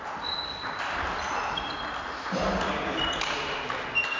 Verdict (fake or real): real